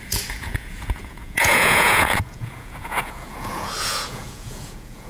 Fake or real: fake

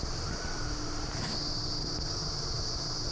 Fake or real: real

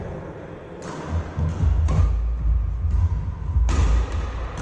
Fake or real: real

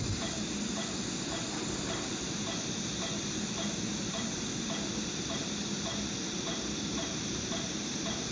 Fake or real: real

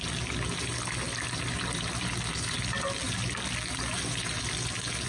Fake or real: real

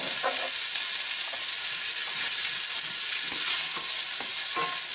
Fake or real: real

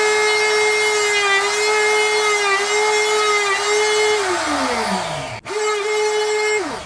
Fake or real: real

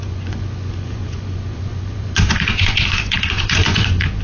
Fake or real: fake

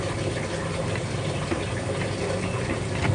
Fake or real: real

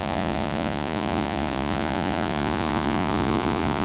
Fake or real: fake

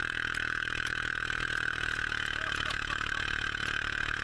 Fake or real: fake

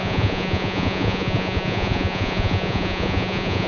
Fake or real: fake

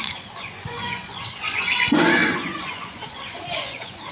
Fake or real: fake